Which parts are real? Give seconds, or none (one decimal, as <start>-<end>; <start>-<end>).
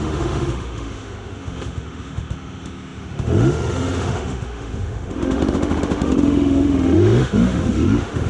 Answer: none